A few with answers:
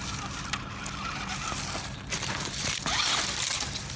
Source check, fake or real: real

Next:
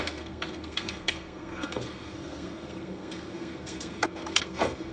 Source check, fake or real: fake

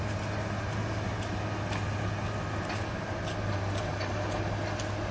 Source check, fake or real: real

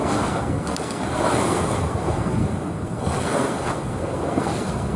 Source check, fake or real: fake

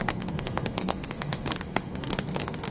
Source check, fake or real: fake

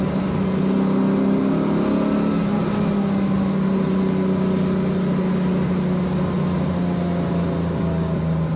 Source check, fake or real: real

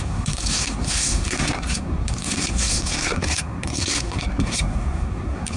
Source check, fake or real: fake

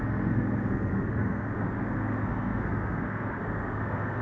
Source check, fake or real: fake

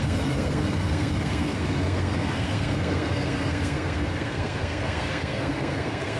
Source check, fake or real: fake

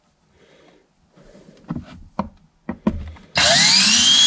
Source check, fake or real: real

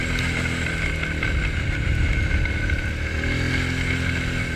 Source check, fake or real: real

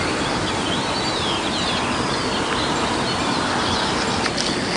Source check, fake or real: real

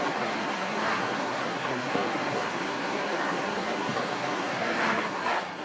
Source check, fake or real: fake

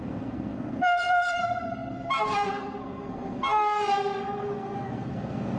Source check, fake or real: fake